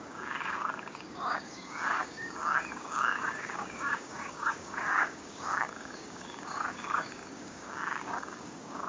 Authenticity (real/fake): fake